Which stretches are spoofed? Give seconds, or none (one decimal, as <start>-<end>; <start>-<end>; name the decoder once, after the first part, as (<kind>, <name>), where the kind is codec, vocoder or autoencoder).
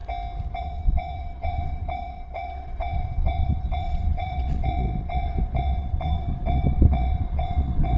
0.6-8.0 (vocoder, Vocos)